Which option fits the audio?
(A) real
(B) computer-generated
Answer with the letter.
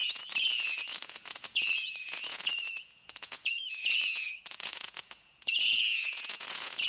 B